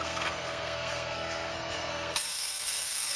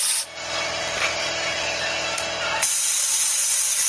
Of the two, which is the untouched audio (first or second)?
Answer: second